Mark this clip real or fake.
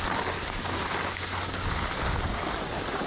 real